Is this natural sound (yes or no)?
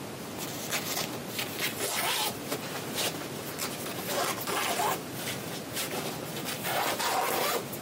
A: yes